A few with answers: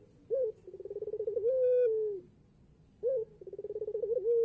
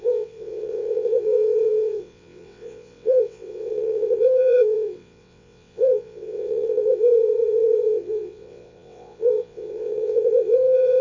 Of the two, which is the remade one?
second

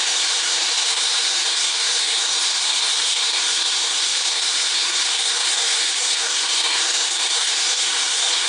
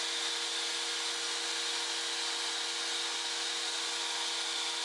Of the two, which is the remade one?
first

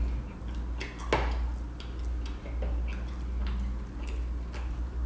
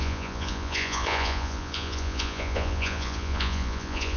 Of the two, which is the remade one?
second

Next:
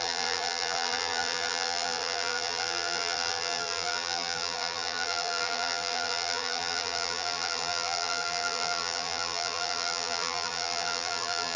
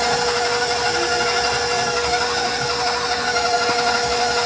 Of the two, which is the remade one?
first